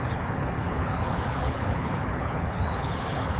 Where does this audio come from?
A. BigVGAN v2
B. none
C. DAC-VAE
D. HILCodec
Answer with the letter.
D